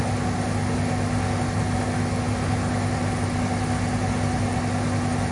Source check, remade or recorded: recorded